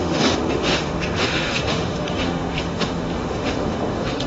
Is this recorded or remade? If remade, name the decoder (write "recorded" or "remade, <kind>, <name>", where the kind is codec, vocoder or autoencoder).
remade, autoencoder, DAC-VAE